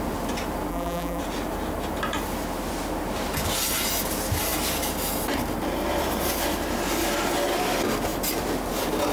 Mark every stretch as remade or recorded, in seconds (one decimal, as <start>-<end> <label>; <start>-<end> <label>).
0.0-0.7 recorded; 0.7-1.2 remade; 1.2-9.1 recorded